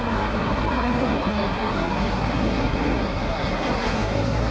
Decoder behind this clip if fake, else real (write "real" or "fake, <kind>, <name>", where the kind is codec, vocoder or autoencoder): fake, codec, SNAC